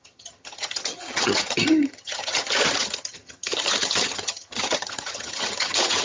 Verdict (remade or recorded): remade